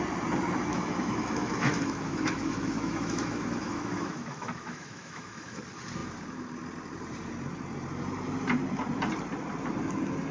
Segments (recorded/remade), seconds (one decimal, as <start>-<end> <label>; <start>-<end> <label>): 0.0-0.7 recorded; 0.7-5.6 remade; 5.6-10.3 recorded